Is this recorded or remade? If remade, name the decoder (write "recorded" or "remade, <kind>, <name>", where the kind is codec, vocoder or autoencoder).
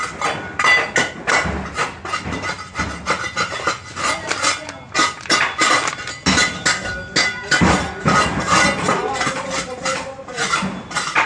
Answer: recorded